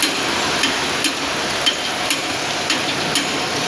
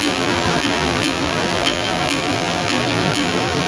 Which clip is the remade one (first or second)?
second